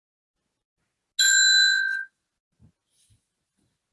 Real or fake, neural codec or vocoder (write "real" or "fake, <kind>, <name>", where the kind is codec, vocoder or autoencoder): real